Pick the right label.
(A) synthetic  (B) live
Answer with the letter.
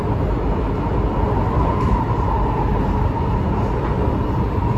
B